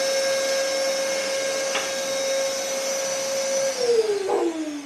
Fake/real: real